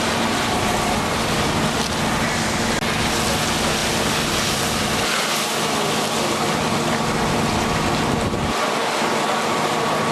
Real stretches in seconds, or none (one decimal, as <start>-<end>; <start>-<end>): 0.0-10.1